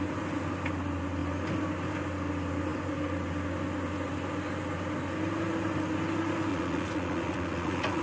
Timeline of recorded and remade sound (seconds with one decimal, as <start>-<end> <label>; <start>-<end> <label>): 0.0-6.5 recorded; 6.5-8.0 remade

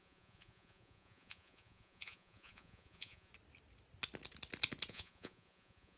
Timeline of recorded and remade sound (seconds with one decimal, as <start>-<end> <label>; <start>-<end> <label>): 0.0-3.3 remade; 3.3-4.9 recorded; 4.9-6.0 remade

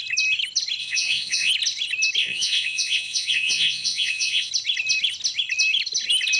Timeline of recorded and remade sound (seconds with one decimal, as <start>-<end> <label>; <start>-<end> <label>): 0.0-0.8 recorded; 0.8-1.5 remade; 1.5-2.2 recorded; 2.2-4.5 remade; 4.5-6.4 recorded

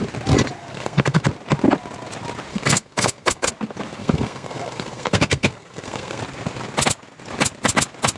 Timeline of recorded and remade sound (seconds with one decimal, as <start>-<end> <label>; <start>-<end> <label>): 0.0-0.6 recorded; 0.6-1.2 remade; 1.2-2.5 recorded; 2.5-3.5 remade; 3.5-4.0 recorded; 4.0-6.2 remade; 6.2-8.2 recorded

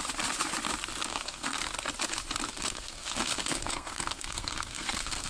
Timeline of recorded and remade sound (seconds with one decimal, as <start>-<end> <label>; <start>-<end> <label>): 0.0-1.1 recorded; 1.1-1.6 remade; 1.6-2.5 recorded; 2.5-5.3 remade

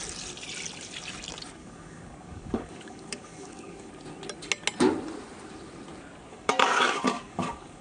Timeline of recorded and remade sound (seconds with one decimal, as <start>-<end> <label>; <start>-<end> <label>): 0.0-1.6 recorded; 1.6-3.9 remade; 3.9-6.3 recorded; 6.3-7.8 remade